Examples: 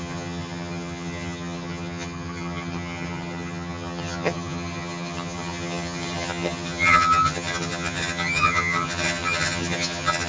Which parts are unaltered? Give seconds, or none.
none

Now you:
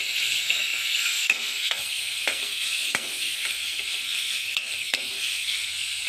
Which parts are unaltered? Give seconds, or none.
none

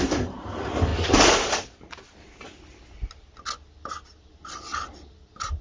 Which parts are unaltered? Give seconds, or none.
0.0-5.6

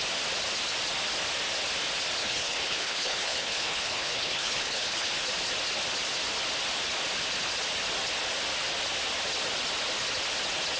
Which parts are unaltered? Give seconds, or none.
0.0-2.2; 5.1-10.8

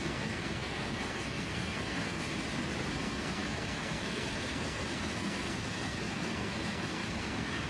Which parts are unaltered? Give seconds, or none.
2.2-2.9

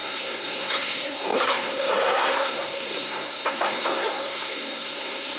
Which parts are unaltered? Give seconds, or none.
none

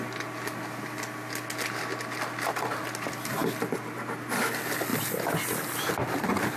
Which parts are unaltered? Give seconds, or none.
0.0-6.6

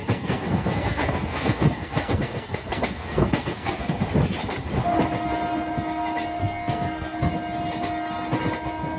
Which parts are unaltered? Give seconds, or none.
4.0-6.4; 7.3-9.0